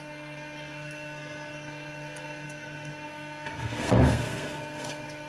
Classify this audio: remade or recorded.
remade